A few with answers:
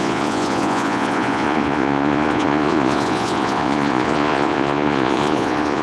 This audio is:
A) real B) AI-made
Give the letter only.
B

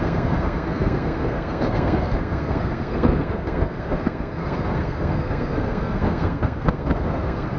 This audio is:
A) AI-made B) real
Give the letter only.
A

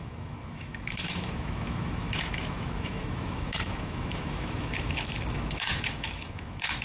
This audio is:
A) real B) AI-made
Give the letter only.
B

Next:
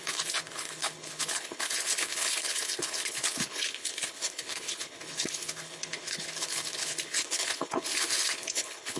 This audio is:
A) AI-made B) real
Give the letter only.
A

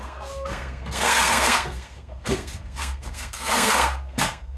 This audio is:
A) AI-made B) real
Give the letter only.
A